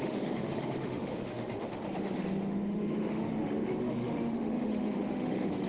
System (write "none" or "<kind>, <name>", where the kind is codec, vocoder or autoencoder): autoencoder, DAC-VAE